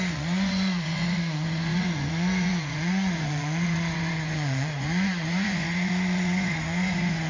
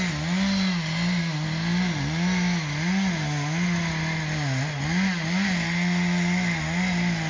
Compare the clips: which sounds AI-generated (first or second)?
first